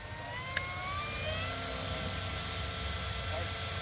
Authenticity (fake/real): real